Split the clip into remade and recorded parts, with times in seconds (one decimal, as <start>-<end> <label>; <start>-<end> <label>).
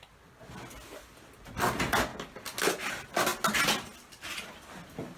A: 0.0-5.2 recorded